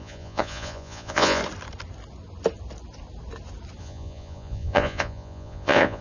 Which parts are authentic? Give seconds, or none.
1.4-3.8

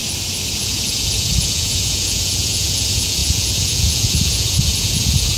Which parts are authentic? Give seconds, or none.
0.0-0.6

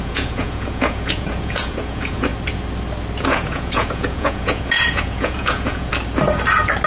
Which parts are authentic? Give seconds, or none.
2.3-3.2; 5.9-6.9

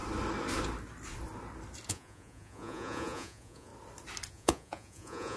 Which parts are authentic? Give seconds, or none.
0.0-1.9; 3.7-4.3

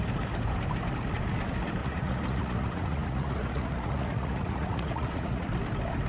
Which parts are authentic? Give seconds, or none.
0.0-1.8; 5.5-6.1